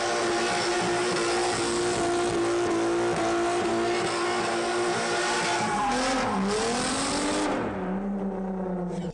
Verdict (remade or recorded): recorded